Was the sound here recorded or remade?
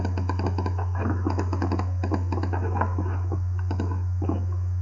remade